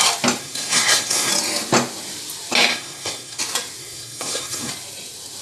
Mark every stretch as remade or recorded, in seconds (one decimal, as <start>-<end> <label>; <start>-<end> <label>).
0.0-0.4 recorded; 0.4-1.3 remade; 1.3-2.7 recorded; 2.7-3.4 remade; 3.4-3.8 recorded; 3.8-4.7 remade; 4.7-5.4 recorded